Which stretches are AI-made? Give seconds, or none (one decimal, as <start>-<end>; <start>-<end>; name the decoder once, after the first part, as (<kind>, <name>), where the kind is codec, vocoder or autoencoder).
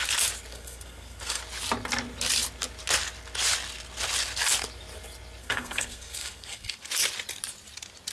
0.5-1.4 (codec, SNAC); 5.4-6.9